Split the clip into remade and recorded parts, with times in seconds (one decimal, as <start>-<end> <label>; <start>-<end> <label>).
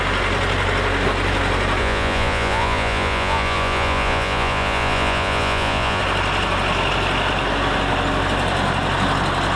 0.0-1.8 recorded; 1.8-6.0 remade; 6.0-9.6 recorded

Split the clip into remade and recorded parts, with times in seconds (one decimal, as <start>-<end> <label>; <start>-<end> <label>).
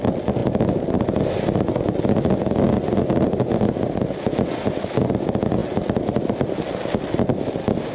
0.0-7.9 recorded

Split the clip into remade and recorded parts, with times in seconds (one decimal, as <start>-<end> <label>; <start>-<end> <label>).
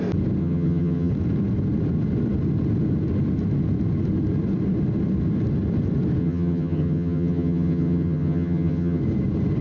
0.0-0.4 recorded; 0.4-1.1 remade; 1.1-6.2 recorded; 6.2-9.0 remade; 9.0-9.6 recorded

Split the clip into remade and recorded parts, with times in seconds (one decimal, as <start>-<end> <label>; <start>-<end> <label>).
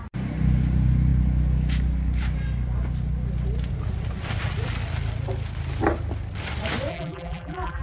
0.0-6.9 recorded; 6.9-7.8 remade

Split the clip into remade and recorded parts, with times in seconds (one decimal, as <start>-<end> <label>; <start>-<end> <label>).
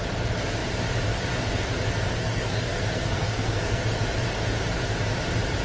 0.0-2.2 recorded; 2.2-3.8 remade; 3.8-5.6 recorded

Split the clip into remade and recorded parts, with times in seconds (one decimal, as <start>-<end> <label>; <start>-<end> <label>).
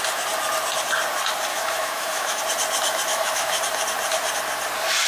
0.0-1.5 recorded; 1.5-2.4 remade; 2.4-3.1 recorded; 3.1-3.6 remade; 3.6-5.1 recorded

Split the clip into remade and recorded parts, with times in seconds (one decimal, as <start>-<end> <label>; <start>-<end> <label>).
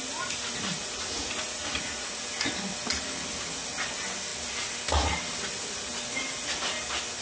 0.0-0.8 recorded; 0.8-2.2 remade; 2.2-7.2 recorded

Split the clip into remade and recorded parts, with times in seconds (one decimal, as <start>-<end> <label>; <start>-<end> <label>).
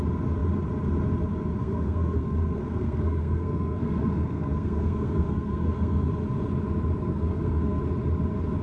0.0-1.6 recorded; 1.6-6.1 remade; 6.1-7.1 recorded; 7.1-7.8 remade; 7.8-8.6 recorded